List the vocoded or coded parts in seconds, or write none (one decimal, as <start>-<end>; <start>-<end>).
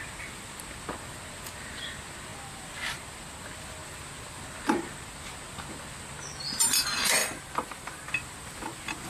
7.2-8.1